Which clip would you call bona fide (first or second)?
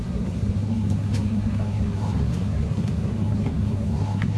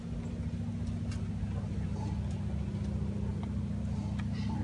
second